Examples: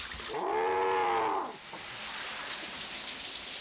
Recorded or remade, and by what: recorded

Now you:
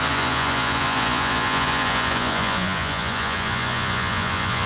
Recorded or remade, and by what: remade, vocoder, Vocos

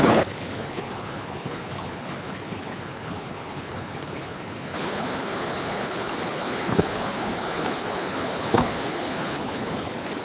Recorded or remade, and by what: remade, codec, HILCodec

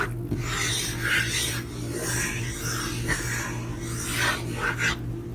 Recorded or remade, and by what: recorded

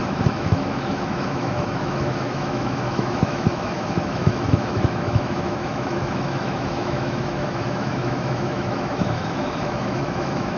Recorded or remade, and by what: remade, autoencoder, DAC-VAE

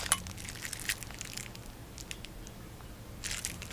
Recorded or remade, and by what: recorded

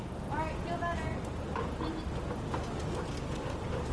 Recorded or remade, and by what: recorded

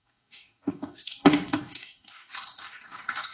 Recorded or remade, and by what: remade, codec, DAC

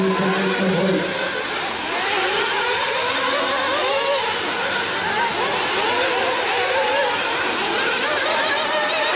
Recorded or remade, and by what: recorded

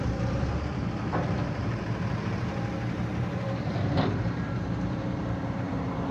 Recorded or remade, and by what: remade, vocoder, BigVGAN v2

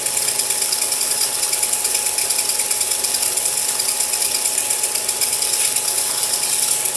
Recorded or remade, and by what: recorded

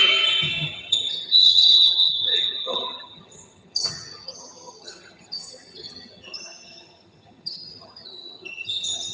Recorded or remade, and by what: remade, vocoder, HiFi-GAN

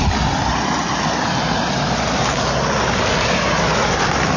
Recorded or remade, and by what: recorded